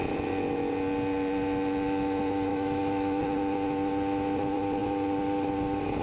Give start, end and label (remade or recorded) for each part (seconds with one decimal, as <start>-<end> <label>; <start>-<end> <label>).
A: 0.0-2.5 recorded; 2.5-3.2 remade; 3.2-6.0 recorded